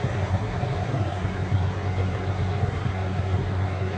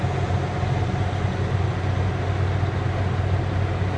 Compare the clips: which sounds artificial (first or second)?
first